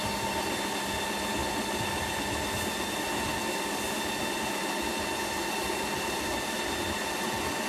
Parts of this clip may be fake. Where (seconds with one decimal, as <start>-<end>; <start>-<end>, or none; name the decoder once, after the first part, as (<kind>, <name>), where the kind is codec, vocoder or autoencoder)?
none